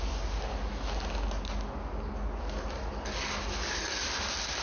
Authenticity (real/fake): real